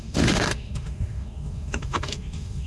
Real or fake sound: fake